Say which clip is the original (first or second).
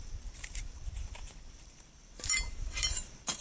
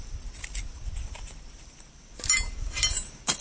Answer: second